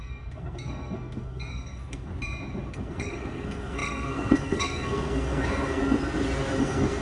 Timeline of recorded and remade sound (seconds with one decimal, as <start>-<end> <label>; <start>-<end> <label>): 0.0-2.1 remade; 2.1-2.7 recorded; 2.7-5.8 remade; 5.8-6.6 recorded; 6.6-7.0 remade